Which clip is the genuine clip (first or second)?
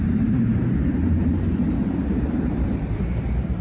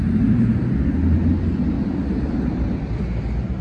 second